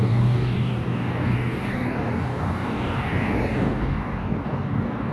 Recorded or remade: remade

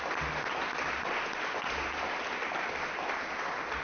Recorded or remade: recorded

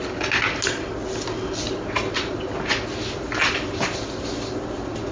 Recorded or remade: recorded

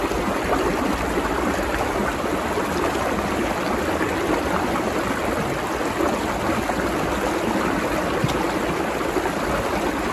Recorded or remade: recorded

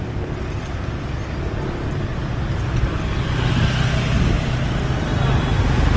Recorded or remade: recorded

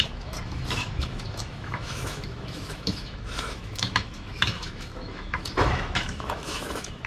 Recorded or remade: remade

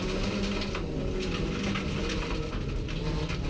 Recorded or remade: recorded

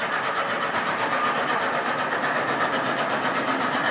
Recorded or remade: recorded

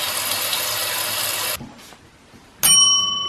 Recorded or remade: recorded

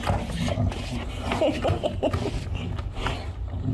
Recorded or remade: recorded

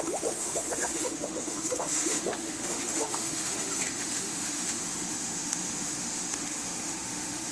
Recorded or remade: remade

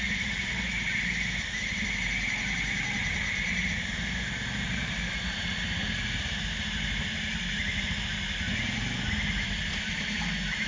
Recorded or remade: recorded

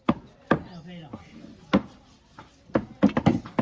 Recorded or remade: recorded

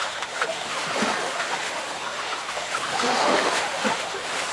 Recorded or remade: remade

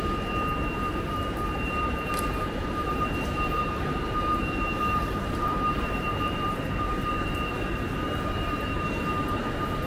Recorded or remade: remade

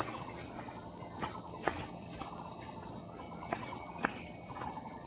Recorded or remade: remade